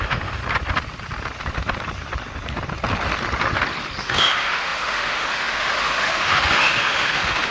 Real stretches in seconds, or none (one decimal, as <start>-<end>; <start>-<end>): 0.4-4.0